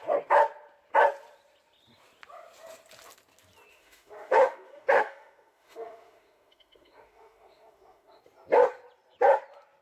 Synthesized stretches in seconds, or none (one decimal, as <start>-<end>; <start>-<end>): 3.7-8.2